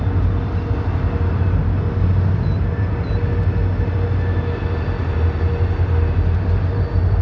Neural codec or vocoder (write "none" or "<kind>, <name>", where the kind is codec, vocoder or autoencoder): none